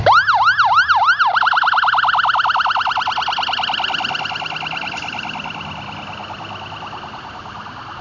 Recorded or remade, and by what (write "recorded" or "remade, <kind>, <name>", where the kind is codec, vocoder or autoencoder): recorded